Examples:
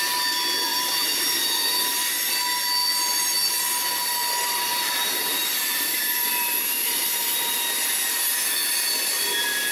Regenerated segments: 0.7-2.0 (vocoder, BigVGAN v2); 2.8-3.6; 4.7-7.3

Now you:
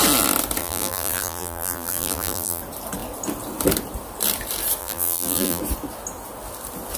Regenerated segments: 0.6-2.6 (vocoder, BigVGAN v2); 4.8-5.6

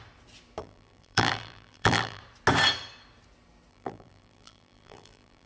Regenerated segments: 0.6-2.2 (vocoder, BigVGAN v2); 3.7-5.5

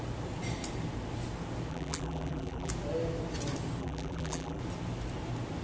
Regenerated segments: 1.7-2.7 (vocoder, BigVGAN v2); 3.8-4.6

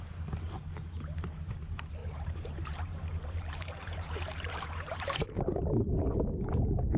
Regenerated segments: 2.0-5.4 (vocoder, BigVGAN v2)

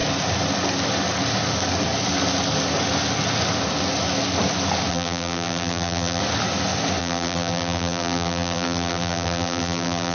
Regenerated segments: 4.9-6.2 (vocoder, BigVGAN v2); 7.0-10.1

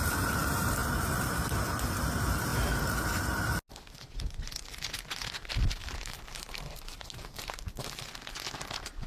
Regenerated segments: 5.8-8.0 (vocoder, BigVGAN v2)

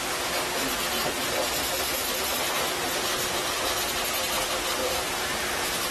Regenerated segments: 2.3-3.7 (vocoder, BigVGAN v2); 4.8-5.9